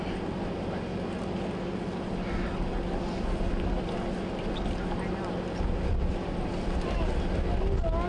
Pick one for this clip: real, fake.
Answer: real